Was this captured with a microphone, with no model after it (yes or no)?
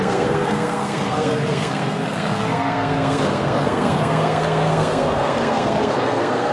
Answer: no